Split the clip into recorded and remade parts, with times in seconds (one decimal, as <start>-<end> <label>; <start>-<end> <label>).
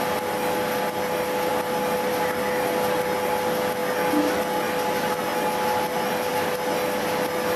0.0-7.6 recorded